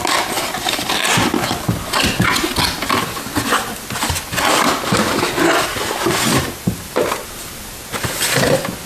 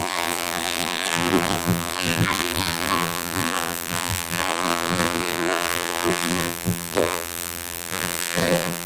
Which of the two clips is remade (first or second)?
second